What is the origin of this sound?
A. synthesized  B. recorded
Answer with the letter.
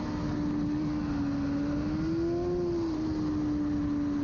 B